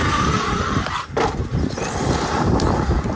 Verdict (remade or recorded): remade